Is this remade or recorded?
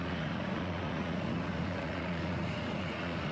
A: remade